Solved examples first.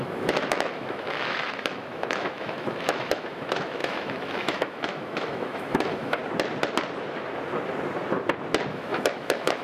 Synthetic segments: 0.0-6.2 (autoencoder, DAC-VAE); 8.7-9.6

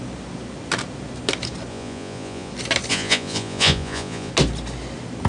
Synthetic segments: 1.7-2.5 (vocoder, Vocos); 2.9-4.3

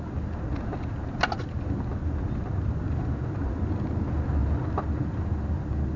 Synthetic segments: none

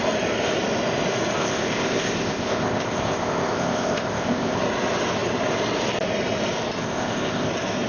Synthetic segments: 1.4-4.6 (codec, ZipCodec); 6.8-7.5

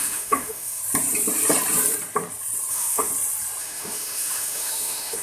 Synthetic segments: 0.0-0.8 (autoencoder, DAC-VAE); 2.7-3.1; 3.6-5.2